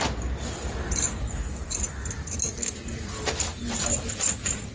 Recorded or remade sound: recorded